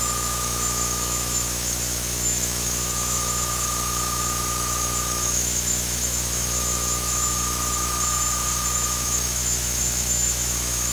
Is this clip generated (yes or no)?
yes